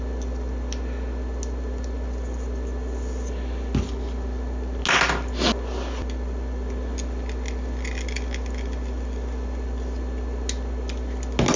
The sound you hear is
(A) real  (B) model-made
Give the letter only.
A